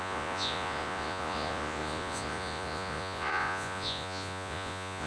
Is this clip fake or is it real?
fake